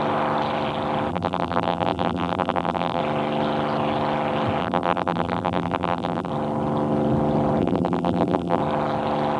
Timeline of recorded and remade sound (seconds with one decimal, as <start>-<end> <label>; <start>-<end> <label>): 0.0-1.1 recorded; 1.1-3.0 remade; 3.0-4.6 recorded; 4.6-6.3 remade; 6.3-7.6 recorded; 7.6-8.6 remade; 8.6-9.4 recorded